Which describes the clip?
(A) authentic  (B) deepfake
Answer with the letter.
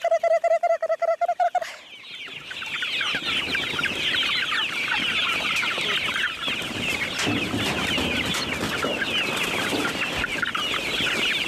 A